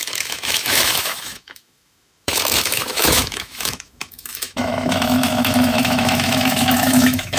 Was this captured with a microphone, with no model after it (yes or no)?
no